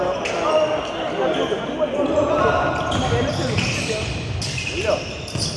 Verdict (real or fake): real